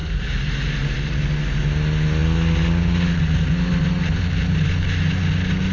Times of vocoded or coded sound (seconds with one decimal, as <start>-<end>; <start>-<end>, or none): 0.0-1.6